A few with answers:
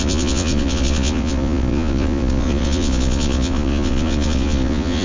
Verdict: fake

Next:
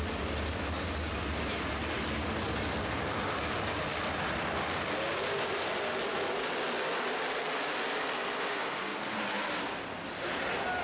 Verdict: real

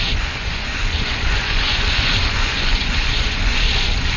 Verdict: fake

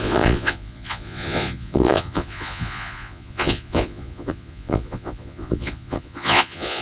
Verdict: fake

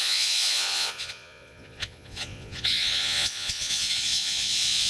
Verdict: fake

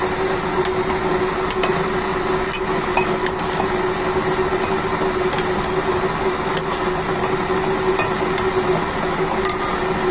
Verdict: real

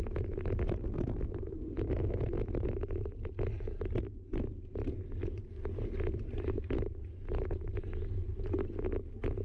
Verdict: real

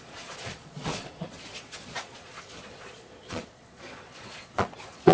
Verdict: fake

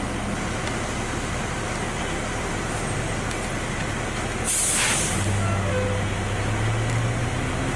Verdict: real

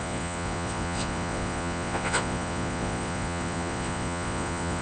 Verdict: fake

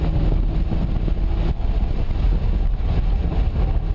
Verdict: real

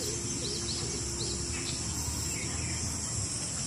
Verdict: real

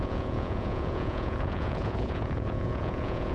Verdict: fake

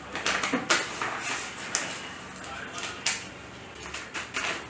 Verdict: real